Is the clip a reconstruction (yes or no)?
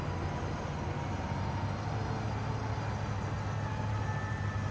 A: no